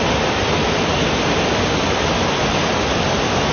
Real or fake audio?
real